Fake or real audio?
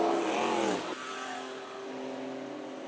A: real